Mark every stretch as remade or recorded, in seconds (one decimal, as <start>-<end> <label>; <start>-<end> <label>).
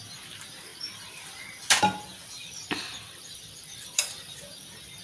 0.0-2.4 recorded; 2.4-3.1 remade; 3.1-5.0 recorded